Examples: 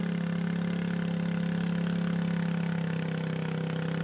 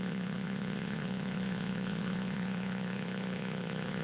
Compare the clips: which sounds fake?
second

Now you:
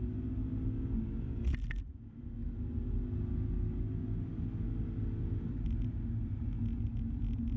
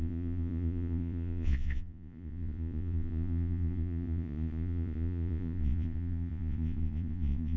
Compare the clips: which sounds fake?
second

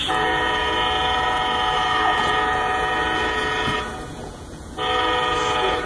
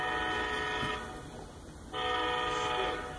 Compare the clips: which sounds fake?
first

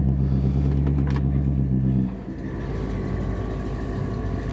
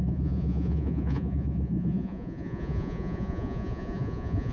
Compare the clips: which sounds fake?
second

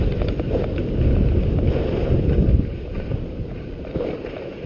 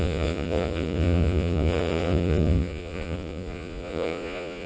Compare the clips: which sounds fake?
second